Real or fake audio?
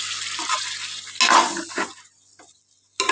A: real